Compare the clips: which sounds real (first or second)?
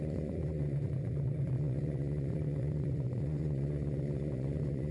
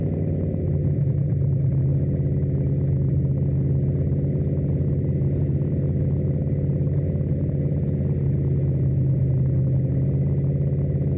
second